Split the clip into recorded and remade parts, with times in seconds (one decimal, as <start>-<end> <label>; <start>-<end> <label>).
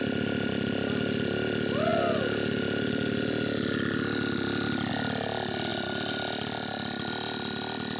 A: 0.0-8.0 recorded